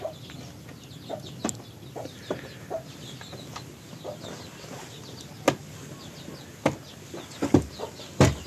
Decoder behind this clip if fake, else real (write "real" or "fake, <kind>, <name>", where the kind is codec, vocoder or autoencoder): real